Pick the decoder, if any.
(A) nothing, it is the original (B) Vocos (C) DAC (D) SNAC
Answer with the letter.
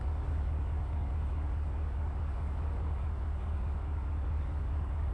C